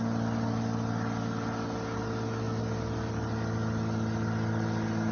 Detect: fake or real real